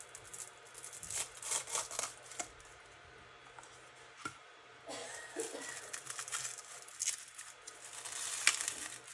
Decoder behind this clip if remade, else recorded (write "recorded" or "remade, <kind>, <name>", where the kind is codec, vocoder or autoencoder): recorded